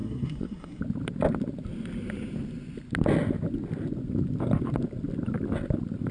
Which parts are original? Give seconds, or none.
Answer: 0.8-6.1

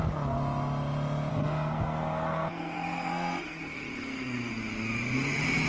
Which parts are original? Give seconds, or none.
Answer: 0.0-1.3; 4.5-5.7

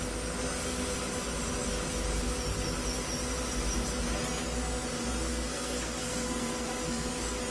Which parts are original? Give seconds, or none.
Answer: 0.0-5.3; 7.1-7.5

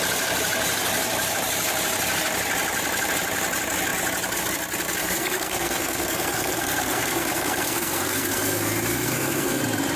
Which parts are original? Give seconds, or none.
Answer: 0.0-5.0; 9.6-10.0

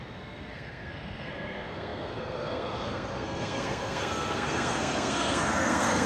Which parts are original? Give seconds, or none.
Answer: none

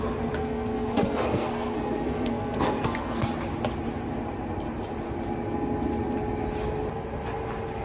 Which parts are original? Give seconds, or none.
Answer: 0.0-0.4; 3.3-7.8

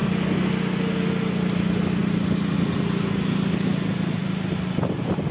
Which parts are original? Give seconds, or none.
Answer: 0.0-5.3